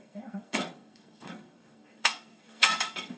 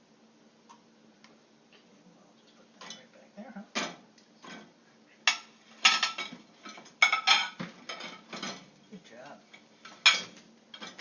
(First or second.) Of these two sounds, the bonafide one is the second